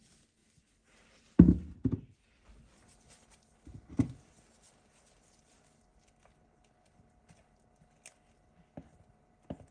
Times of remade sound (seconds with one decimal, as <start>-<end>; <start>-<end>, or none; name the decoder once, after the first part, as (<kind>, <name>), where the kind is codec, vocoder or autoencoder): none